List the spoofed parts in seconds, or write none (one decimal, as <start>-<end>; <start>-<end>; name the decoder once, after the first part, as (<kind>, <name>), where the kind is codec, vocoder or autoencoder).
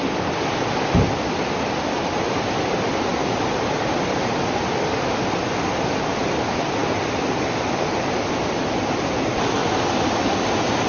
none